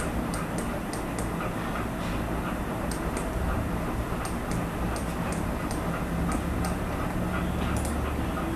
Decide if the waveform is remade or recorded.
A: recorded